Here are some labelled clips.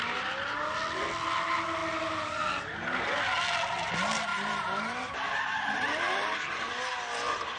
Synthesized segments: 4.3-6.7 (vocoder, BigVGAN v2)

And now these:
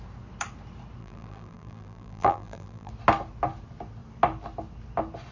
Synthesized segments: 1.0-2.9 (vocoder, BigVGAN v2)

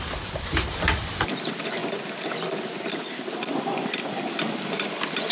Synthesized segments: 0.0-1.8 (vocoder, BigVGAN v2)

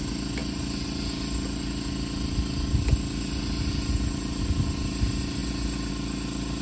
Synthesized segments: none